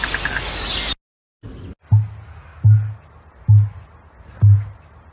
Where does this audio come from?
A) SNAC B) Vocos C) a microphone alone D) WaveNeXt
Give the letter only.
C